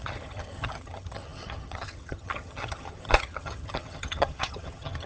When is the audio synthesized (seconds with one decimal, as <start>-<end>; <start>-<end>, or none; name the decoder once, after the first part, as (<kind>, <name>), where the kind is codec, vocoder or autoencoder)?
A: 0.0-5.1 (vocoder, HiFi-GAN)